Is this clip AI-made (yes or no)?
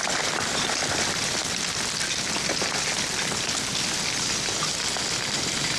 no